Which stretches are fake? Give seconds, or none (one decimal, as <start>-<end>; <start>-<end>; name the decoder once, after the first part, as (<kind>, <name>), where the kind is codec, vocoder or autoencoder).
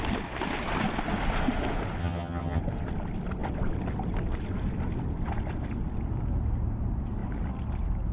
2.0-2.6 (vocoder, HiFi-GAN)